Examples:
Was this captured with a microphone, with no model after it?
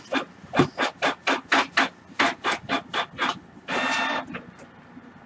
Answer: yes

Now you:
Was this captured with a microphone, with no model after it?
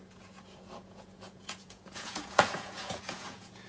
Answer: no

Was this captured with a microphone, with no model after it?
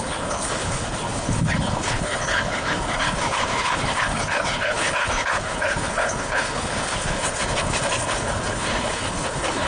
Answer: no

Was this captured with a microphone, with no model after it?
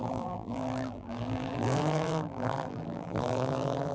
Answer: no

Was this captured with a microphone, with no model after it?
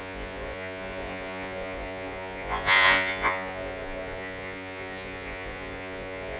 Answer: no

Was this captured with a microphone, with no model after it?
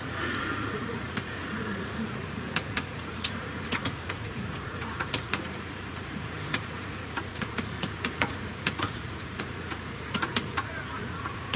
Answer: no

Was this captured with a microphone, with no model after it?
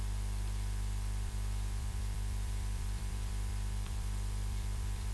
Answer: no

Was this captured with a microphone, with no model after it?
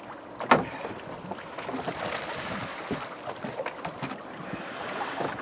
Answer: yes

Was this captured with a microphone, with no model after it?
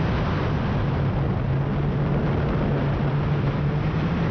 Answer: yes